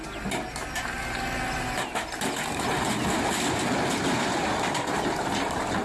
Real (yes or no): yes